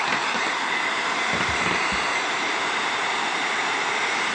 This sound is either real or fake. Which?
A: fake